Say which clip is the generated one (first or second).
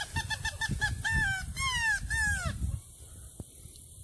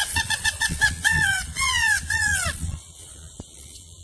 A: second